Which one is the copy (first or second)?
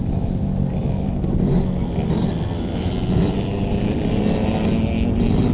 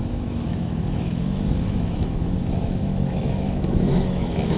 second